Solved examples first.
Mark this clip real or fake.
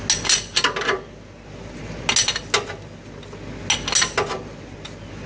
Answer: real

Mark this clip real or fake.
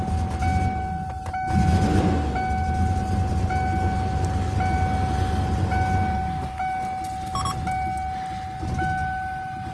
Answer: real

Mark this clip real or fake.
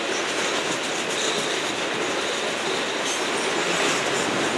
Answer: real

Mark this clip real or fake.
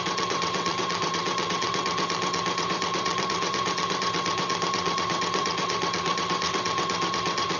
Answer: fake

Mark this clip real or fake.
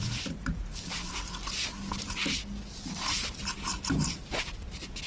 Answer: real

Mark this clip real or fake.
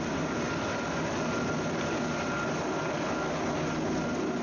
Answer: real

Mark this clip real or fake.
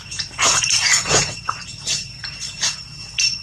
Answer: fake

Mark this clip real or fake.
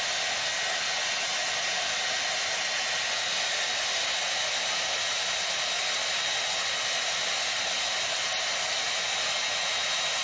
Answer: real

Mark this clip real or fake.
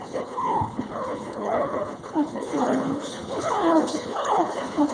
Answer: fake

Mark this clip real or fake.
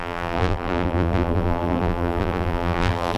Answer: fake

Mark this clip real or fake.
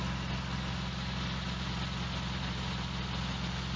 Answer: real